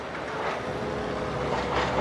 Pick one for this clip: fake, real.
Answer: real